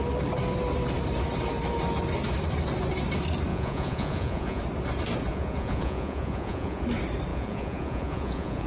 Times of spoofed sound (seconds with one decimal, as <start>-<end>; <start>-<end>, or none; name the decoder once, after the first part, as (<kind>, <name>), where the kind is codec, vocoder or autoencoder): 3.5-4.6 (vocoder, Vocos); 5.3-6.8; 7.3-8.7